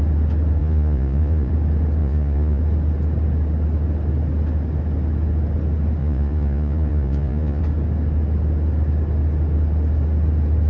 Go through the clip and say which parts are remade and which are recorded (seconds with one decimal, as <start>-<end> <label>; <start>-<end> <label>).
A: 0.0-0.6 recorded; 0.6-1.5 remade; 1.5-2.0 recorded; 2.0-2.6 remade; 2.6-6.0 recorded; 6.0-7.6 remade; 7.6-10.7 recorded